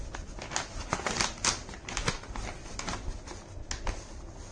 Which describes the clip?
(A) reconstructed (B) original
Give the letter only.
B